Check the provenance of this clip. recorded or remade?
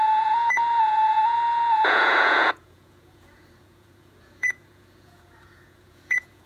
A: remade